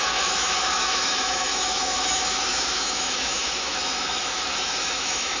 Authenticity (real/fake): fake